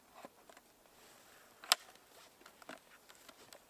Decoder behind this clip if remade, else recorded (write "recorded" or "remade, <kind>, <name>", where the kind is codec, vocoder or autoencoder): recorded